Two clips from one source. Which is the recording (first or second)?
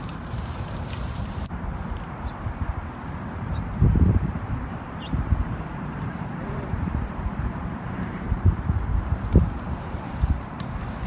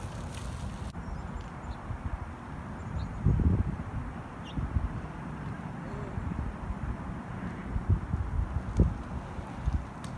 second